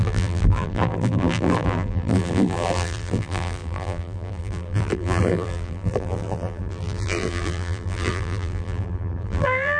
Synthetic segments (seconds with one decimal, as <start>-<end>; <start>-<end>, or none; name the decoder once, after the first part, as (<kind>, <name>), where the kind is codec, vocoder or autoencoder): 0.0-9.8 (vocoder, BigVGAN v2)